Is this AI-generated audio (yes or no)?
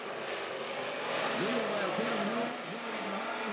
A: no